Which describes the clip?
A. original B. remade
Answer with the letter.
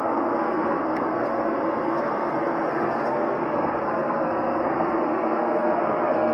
B